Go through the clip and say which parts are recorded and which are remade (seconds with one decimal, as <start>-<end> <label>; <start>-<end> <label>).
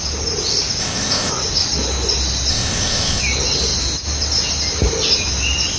0.0-0.8 recorded; 0.8-1.3 remade; 1.3-2.5 recorded; 2.5-3.2 remade; 3.2-5.8 recorded